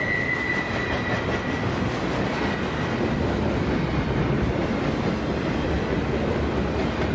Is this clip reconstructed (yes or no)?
no